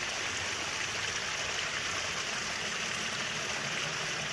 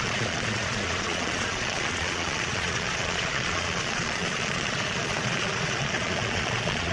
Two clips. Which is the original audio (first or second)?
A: first